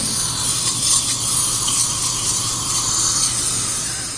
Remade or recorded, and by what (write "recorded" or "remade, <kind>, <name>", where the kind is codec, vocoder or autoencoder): recorded